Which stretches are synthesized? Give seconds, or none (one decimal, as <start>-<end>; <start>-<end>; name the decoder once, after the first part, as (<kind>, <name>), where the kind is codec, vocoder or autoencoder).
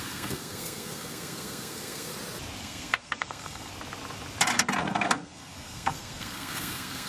0.0-2.1 (codec, SNAC); 2.6-3.7; 4.8-7.1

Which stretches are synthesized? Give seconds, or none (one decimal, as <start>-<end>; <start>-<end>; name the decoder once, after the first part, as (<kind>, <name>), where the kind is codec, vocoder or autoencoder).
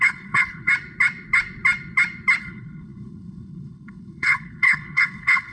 0.0-0.7 (codec, HILCodec); 2.4-5.5